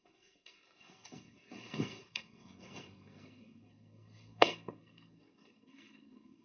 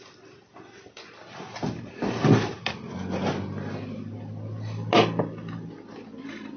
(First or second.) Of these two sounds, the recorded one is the second